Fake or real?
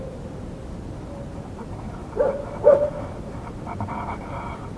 real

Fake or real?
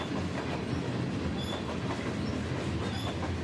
real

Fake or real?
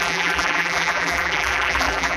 fake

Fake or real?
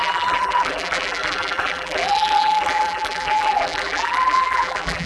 fake